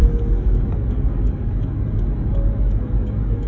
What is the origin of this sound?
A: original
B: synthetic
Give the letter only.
B